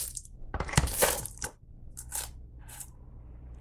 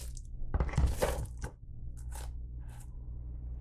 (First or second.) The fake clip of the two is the first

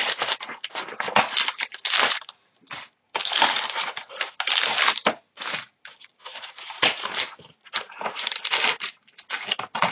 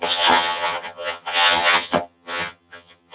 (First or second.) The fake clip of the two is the second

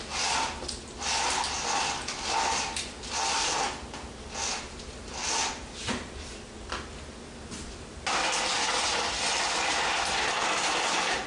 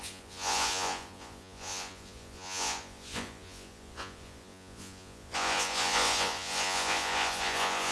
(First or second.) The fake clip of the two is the second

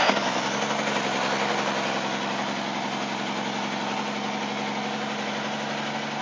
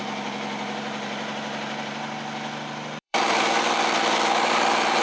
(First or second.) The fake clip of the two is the second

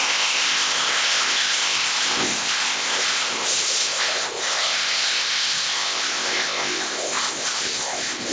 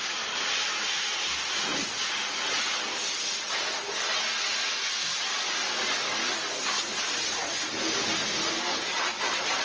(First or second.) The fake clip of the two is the first